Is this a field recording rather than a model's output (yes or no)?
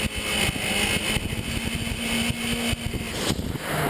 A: yes